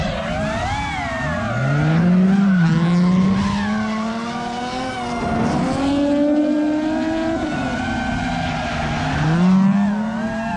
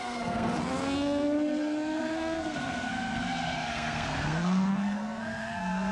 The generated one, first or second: second